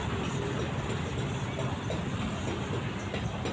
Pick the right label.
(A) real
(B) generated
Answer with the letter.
A